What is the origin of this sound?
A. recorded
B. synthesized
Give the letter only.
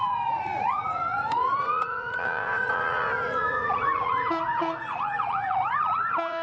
B